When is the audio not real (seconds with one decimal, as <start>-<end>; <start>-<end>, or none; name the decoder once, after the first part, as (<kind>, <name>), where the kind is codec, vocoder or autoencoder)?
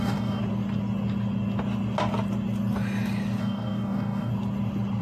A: 0.0-0.4 (codec, DAC); 3.4-4.3